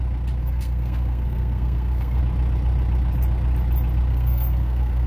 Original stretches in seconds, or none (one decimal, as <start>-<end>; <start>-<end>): 0.0-0.4; 2.2-4.1